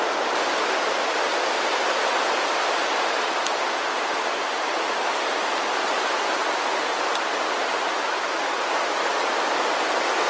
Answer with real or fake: fake